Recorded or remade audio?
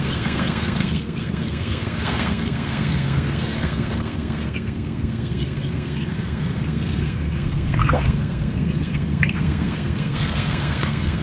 remade